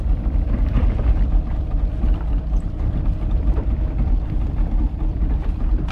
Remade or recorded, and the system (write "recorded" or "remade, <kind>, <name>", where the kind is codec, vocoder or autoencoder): remade, vocoder, BigVGAN v2